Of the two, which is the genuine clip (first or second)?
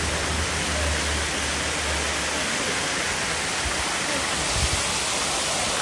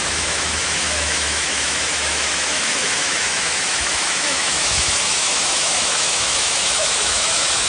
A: first